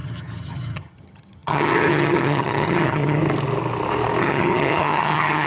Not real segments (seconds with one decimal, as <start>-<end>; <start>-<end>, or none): 0.0-3.2; 4.2-5.5